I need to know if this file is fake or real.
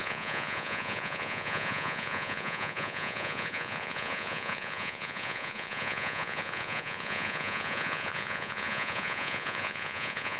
fake